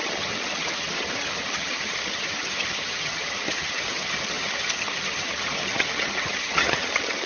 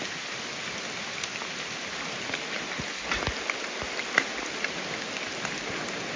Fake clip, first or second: first